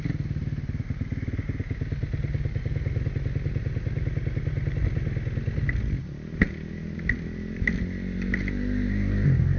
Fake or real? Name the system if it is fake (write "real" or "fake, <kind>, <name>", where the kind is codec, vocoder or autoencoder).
real